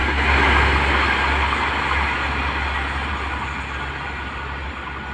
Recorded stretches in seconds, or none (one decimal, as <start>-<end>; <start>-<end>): 0.0-5.1